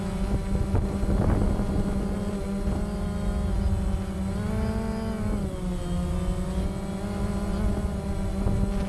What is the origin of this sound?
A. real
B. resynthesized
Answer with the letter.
A